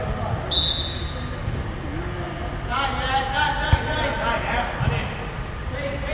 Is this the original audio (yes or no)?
yes